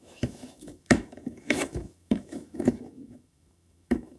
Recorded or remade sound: remade